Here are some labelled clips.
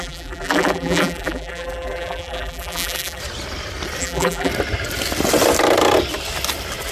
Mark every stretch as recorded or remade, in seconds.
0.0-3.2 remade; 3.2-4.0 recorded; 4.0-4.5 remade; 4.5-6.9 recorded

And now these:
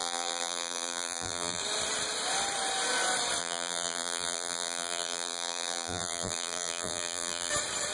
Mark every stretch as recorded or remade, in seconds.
0.0-1.6 remade; 1.6-3.4 recorded; 3.4-7.5 remade; 7.5-7.9 recorded